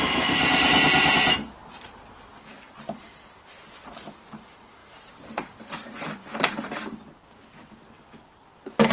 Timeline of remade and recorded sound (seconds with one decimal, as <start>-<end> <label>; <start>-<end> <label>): 0.0-4.8 recorded; 4.8-6.5 remade; 6.5-8.9 recorded